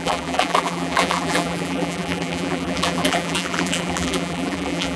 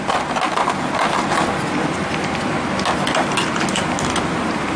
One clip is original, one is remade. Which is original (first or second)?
second